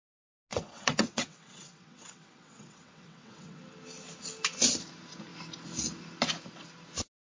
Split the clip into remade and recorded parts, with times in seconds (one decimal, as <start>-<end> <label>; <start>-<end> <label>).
0.0-0.5 recorded; 0.5-3.6 remade; 3.6-7.3 recorded